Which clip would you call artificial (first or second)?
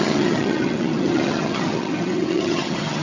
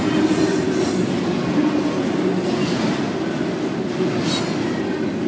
first